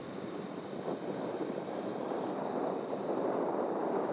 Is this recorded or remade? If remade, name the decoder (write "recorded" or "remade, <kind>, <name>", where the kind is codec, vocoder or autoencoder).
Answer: recorded